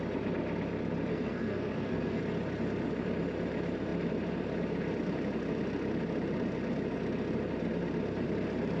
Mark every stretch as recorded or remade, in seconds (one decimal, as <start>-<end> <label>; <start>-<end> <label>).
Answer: 0.0-1.1 recorded; 1.1-2.2 remade; 2.2-8.8 recorded